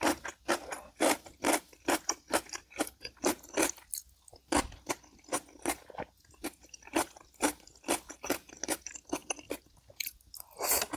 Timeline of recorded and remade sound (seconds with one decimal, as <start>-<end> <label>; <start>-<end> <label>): 0.0-11.0 recorded